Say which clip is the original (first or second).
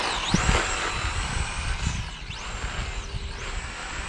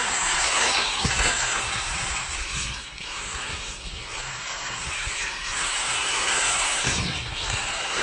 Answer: first